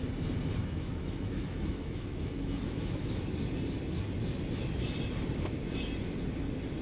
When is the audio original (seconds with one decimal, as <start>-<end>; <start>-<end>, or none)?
0.0-0.6; 3.2-6.8